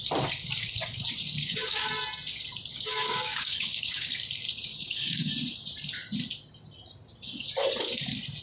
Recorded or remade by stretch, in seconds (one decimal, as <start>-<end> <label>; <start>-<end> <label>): 0.0-1.4 recorded; 1.4-1.9 remade; 1.9-2.7 recorded; 2.7-4.1 remade; 4.1-4.7 recorded; 4.7-5.3 remade; 5.3-8.4 recorded